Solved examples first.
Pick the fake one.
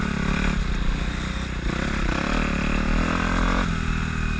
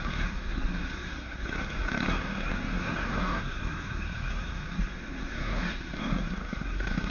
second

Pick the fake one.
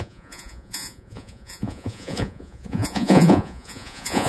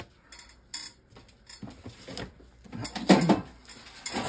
first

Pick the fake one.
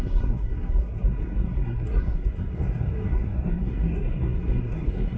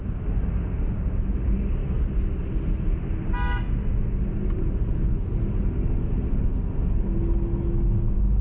first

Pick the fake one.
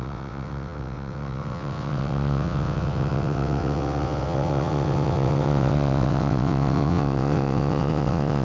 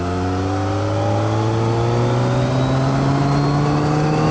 first